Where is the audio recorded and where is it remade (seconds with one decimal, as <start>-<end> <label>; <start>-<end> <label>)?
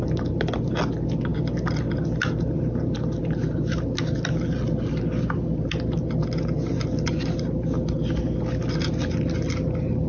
0.0-10.1 recorded